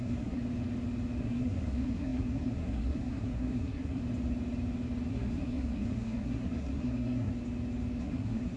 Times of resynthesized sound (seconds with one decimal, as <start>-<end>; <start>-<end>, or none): 0.0-0.4; 1.2-4.0; 5.1-7.3; 8.0-8.6